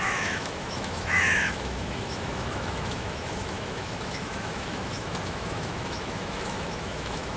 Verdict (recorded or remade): remade